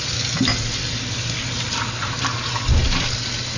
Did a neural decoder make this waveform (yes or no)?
no